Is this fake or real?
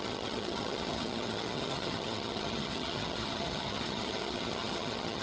fake